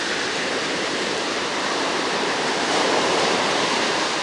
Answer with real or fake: fake